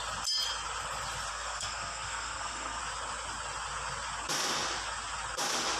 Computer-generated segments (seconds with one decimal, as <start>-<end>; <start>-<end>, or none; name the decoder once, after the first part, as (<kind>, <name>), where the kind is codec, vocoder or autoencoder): 1.3-2.8 (codec, SNAC)